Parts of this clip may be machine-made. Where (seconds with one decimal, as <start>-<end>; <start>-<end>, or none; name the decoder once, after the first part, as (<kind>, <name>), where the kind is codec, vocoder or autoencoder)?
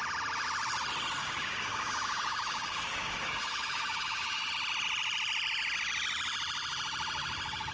1.2-4.5 (codec, DAC)